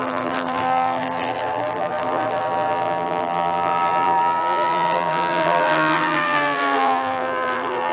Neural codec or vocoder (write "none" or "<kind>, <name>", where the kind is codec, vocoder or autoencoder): vocoder, BigVGAN v2